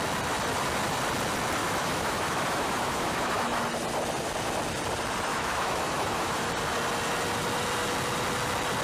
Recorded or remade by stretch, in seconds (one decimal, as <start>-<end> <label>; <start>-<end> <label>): 0.0-1.6 recorded; 1.6-3.6 remade; 3.6-5.3 recorded; 5.3-6.5 remade; 6.5-8.8 recorded